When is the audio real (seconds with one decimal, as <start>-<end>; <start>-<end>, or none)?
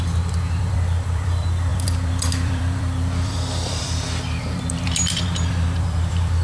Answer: none